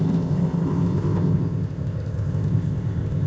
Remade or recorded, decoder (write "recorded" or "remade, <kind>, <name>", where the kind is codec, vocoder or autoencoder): remade, codec, ZipCodec